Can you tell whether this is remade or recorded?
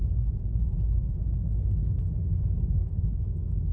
remade